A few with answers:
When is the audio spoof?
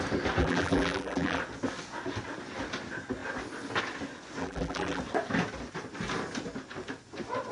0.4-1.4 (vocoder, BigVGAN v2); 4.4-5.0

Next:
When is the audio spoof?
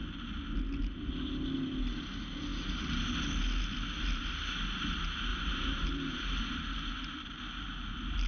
5.3-6.4 (vocoder, BigVGAN v2)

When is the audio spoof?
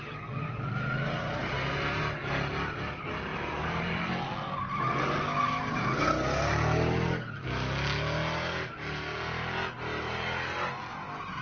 3.3-4.1 (vocoder, BigVGAN v2)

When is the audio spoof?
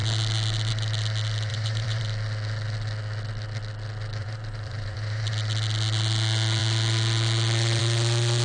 1.5-2.0 (vocoder, BigVGAN v2); 4.2-5.3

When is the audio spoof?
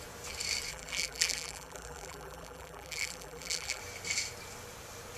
0.7-3.8 (vocoder, BigVGAN v2)